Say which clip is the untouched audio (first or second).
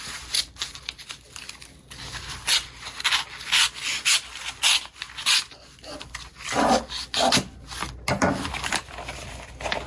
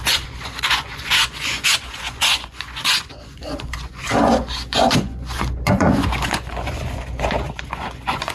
first